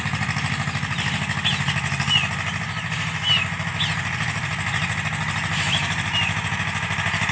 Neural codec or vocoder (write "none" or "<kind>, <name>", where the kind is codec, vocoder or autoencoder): none